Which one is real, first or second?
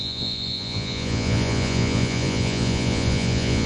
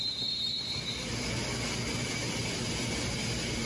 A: second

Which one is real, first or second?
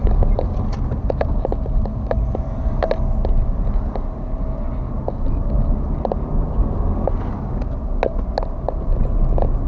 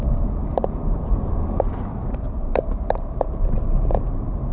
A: first